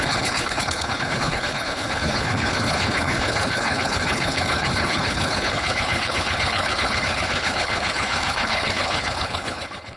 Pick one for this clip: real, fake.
fake